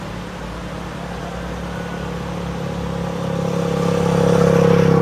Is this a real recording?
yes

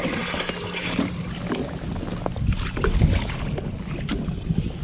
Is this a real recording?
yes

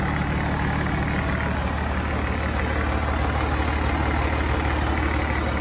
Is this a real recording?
yes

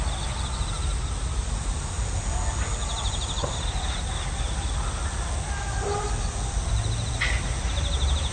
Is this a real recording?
yes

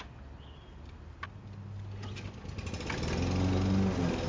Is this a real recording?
yes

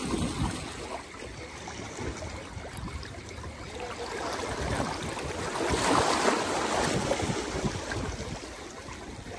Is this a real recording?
yes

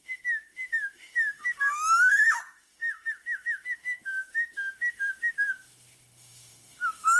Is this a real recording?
no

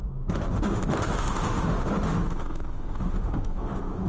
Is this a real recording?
no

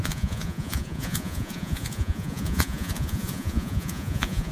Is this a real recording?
no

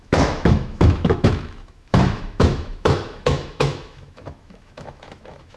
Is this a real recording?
no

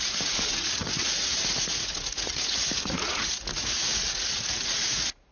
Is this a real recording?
no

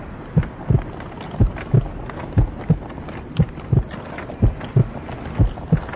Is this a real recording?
yes